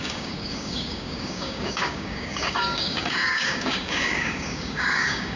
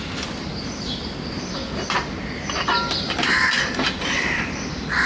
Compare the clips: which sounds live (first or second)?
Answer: second